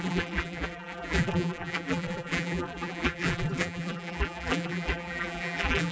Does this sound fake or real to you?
fake